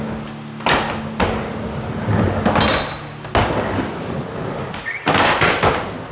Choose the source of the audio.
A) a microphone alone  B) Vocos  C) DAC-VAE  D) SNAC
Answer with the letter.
A